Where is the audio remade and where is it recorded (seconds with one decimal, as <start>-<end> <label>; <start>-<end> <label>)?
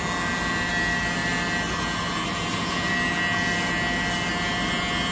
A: 0.0-5.1 recorded